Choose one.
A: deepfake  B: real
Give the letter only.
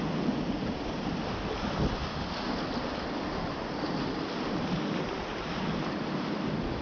B